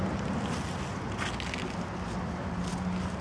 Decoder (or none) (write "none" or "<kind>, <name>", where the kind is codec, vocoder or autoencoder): none